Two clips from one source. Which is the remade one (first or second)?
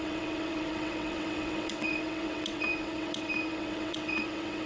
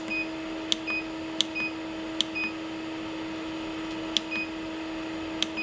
first